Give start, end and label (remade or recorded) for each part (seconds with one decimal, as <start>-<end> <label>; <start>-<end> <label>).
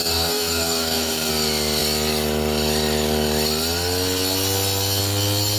0.0-1.3 remade; 1.3-5.6 recorded